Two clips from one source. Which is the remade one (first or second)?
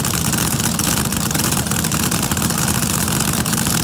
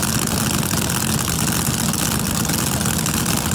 first